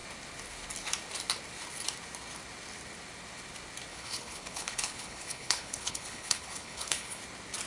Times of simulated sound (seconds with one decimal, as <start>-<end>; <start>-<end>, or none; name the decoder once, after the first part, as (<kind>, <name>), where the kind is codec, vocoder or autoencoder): 3.9-7.2 (codec, HILCodec)